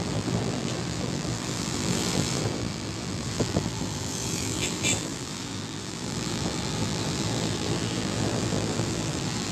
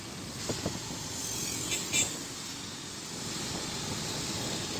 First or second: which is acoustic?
second